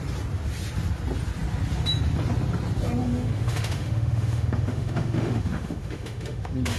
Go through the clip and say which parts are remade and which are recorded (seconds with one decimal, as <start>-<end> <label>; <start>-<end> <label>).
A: 0.0-3.0 recorded; 3.0-6.8 remade